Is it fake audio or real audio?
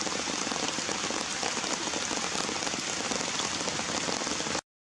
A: real